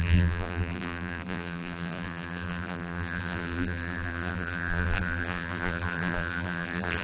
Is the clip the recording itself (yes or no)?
no